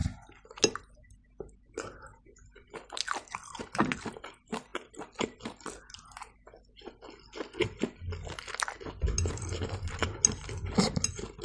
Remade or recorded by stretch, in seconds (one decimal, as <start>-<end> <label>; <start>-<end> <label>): 0.0-11.4 recorded